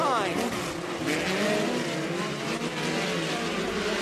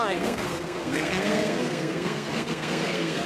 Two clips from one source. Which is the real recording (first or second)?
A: first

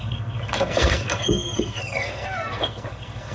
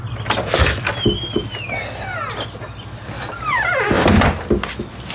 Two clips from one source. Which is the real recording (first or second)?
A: second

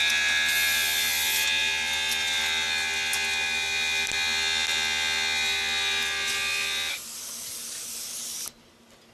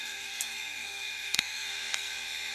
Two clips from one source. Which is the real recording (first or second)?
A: first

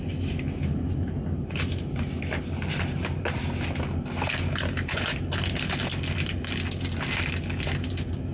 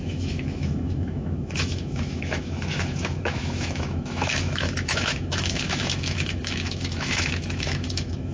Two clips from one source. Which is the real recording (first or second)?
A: first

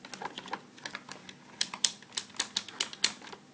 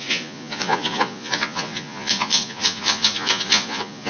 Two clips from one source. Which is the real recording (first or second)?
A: first